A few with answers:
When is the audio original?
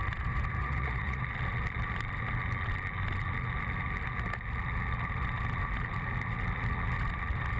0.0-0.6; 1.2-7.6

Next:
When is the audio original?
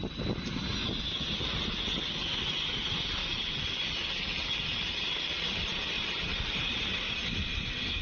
0.0-0.8; 1.4-3.2; 7.2-8.0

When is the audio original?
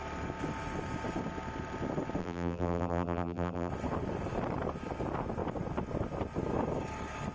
0.0-2.2; 3.7-7.3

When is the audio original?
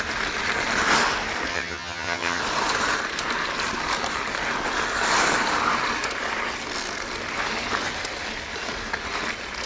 0.0-1.5; 2.4-9.7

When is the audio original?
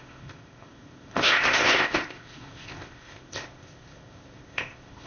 none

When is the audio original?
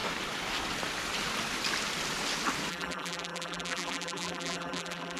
0.0-2.7